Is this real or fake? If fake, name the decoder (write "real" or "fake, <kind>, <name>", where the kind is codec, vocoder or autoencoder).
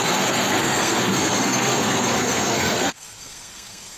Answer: fake, codec, SNAC